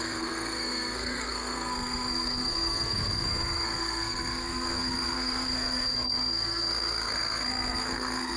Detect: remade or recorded remade